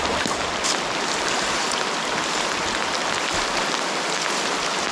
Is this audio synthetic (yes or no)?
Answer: no